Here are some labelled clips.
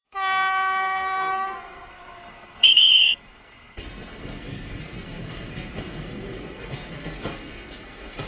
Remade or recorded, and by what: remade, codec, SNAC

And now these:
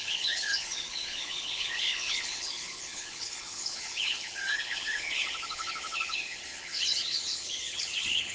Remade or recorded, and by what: remade, codec, HILCodec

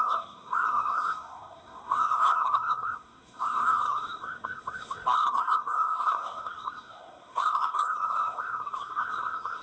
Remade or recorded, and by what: remade, codec, SNAC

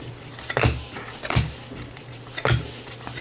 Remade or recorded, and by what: recorded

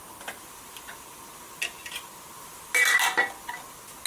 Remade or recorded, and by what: recorded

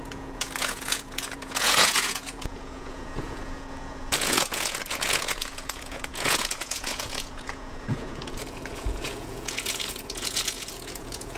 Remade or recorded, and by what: remade, vocoder, Vocos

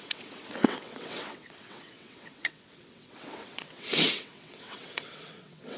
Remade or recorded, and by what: remade, vocoder, WaveNeXt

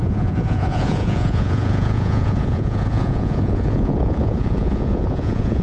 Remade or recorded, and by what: remade, vocoder, Vocos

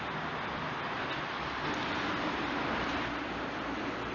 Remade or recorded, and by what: recorded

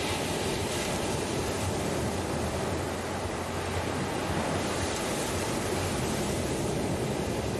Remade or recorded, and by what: recorded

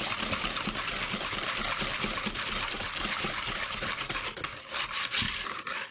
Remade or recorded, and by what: recorded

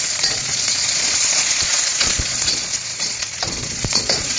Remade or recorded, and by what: remade, vocoder, Vocos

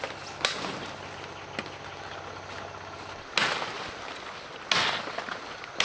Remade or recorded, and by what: recorded